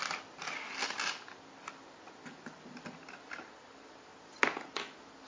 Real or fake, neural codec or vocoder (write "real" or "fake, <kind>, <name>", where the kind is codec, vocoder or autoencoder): real